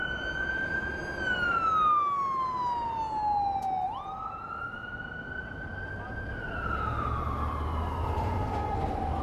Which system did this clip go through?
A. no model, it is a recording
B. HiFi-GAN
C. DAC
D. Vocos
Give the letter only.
A